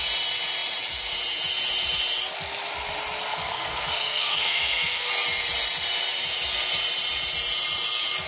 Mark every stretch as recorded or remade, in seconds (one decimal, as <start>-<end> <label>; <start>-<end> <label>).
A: 0.0-3.3 recorded; 3.3-5.1 remade; 5.1-8.3 recorded